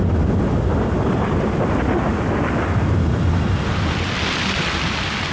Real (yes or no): yes